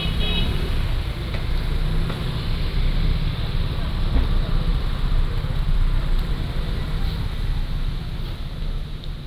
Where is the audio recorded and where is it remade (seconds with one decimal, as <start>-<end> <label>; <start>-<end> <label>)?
0.0-4.7 recorded; 4.7-7.4 remade; 7.4-9.3 recorded